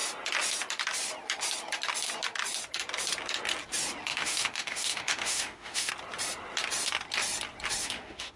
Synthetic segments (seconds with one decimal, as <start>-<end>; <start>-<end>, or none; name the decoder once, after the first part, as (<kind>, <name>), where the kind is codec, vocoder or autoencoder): 4.1-5.9 (autoencoder, DAC-VAE); 7.8-8.4